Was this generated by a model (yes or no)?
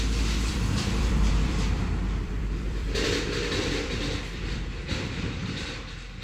yes